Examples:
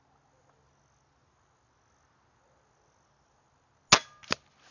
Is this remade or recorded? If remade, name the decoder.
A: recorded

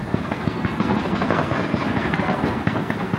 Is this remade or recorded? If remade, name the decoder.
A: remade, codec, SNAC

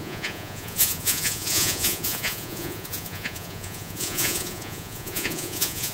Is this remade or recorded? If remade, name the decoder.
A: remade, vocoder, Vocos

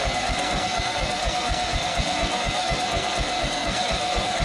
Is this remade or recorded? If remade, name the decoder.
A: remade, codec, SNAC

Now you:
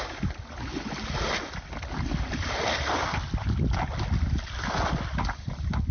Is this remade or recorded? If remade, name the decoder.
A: recorded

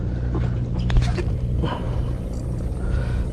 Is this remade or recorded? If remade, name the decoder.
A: recorded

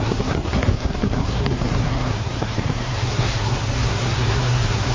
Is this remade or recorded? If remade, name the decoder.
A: remade, codec, SNAC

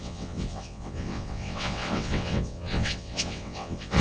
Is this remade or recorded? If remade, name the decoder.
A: remade, vocoder, WaveNeXt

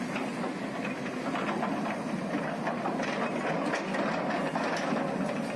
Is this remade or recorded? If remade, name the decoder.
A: recorded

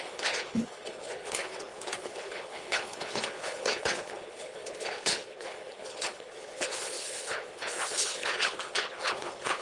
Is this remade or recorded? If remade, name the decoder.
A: remade, codec, HILCodec